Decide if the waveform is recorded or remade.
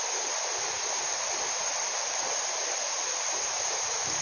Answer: recorded